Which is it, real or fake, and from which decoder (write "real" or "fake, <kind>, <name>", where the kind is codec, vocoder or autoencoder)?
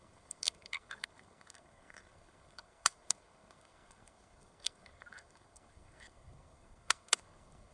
fake, codec, SNAC